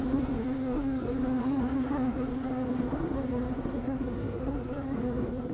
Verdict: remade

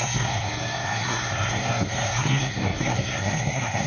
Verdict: remade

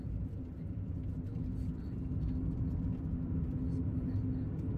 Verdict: recorded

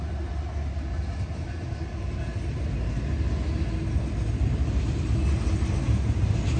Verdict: recorded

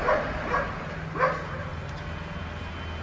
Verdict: recorded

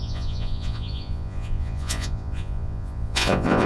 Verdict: remade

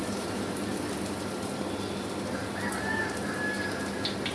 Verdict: recorded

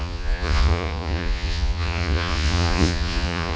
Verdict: remade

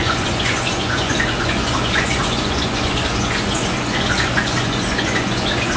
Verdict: remade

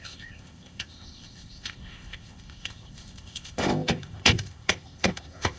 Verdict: remade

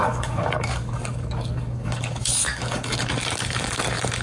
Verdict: remade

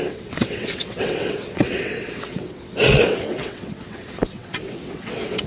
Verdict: remade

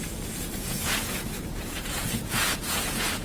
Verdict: remade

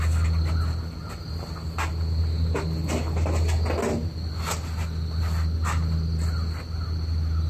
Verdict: recorded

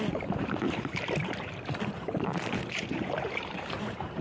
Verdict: remade